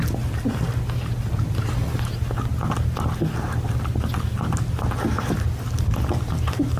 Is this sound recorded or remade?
recorded